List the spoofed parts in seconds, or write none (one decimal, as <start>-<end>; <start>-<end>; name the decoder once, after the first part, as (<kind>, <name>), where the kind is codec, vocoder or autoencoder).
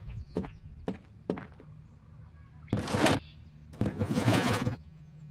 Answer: 0.0-0.7 (vocoder, Vocos); 3.9-5.3